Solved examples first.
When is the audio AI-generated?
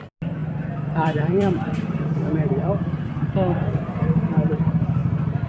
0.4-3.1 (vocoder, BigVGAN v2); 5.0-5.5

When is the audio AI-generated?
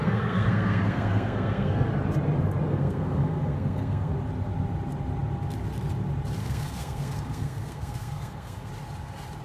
0.0-1.9 (codec, SNAC); 2.7-4.1; 6.4-8.7